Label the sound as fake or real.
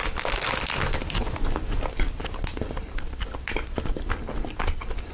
real